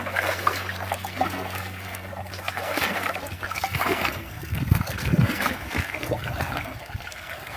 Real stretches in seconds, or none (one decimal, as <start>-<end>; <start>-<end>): none